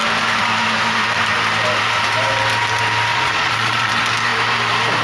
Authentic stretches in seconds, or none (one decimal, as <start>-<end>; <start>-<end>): 0.0-3.1; 3.9-5.0